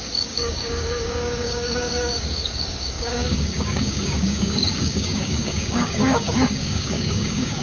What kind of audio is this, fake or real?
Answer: fake